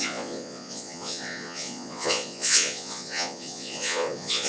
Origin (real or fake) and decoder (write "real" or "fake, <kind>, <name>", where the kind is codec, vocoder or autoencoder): fake, vocoder, Vocos